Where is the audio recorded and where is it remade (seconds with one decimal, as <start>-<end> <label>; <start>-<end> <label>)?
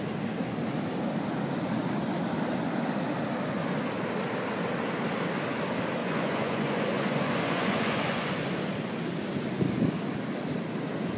0.0-6.0 recorded; 6.0-8.3 remade; 8.3-11.2 recorded